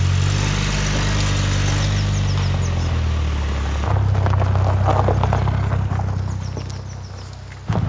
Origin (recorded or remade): recorded